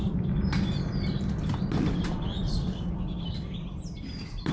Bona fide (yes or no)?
yes